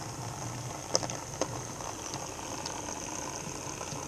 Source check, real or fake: real